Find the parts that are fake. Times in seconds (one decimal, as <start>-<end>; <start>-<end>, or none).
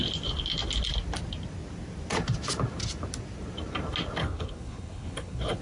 4.2-5.6